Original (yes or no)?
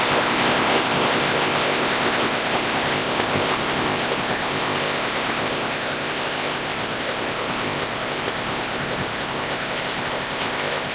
no